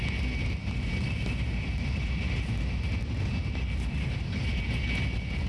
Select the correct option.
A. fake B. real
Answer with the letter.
B